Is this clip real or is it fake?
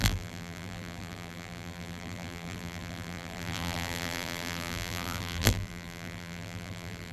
fake